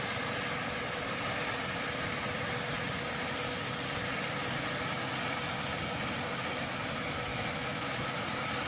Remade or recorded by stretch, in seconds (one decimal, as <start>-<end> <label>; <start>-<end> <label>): 0.0-7.3 recorded; 7.3-8.2 remade; 8.2-8.7 recorded